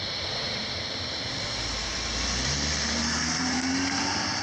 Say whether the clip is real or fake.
fake